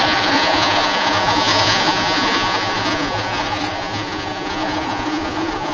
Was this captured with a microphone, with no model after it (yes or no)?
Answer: no